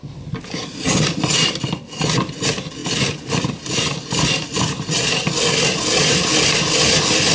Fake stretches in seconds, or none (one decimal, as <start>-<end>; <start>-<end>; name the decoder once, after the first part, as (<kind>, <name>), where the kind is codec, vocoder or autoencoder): none